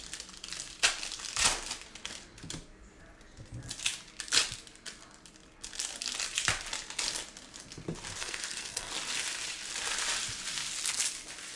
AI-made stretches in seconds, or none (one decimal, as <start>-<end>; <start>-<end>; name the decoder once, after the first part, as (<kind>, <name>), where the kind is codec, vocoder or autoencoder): 8.2-8.9 (codec, SNAC)